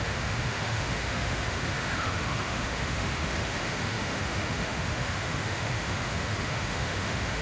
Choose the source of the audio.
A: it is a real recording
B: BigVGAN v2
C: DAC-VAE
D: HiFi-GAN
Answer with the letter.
C